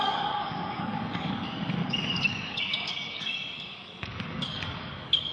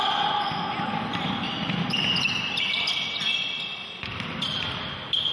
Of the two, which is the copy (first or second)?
first